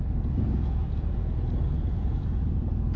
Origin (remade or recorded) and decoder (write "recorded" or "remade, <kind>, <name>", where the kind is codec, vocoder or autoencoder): remade, vocoder, Vocos